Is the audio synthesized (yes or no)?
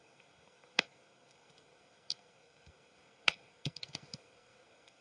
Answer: yes